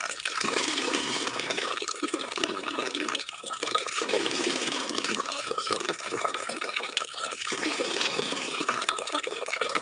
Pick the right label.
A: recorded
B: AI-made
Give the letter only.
B